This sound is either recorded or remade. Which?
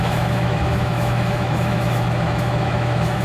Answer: remade